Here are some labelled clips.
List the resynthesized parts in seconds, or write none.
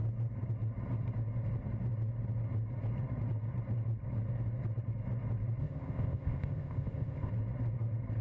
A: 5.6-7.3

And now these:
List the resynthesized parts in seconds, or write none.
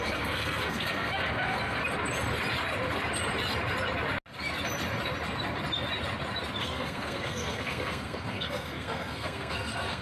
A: 0.0-1.8; 6.6-10.0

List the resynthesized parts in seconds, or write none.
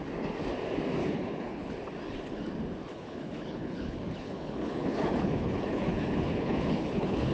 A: 1.0-1.7; 2.9-7.3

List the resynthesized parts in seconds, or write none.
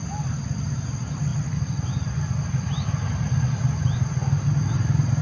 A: none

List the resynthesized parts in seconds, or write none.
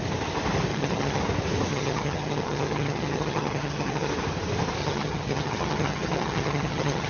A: 0.7-1.2; 1.7-4.1; 4.8-7.1